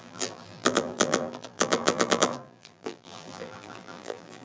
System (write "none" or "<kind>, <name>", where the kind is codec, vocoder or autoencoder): vocoder, BigVGAN v2